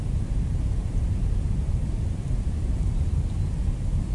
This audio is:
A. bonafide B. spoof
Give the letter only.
B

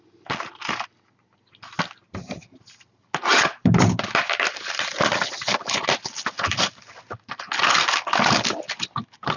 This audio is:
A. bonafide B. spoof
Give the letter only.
A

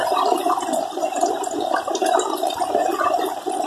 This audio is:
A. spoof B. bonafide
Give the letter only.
A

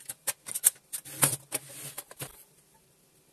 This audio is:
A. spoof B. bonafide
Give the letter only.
B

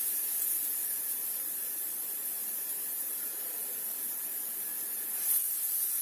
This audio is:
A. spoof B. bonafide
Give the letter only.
A